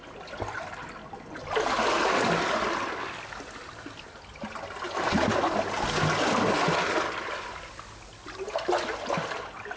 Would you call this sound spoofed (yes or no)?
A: no